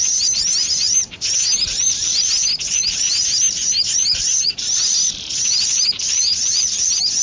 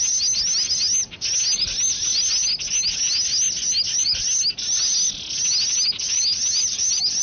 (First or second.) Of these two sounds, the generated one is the first